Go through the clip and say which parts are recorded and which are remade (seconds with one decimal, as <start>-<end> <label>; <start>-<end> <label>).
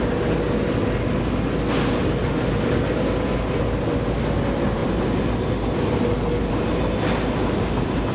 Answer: 0.0-8.1 recorded